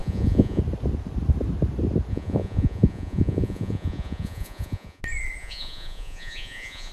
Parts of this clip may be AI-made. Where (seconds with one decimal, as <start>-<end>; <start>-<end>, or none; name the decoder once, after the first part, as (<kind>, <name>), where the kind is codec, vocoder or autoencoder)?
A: 0.0-0.6 (vocoder, Vocos); 2.1-5.0; 5.4-6.9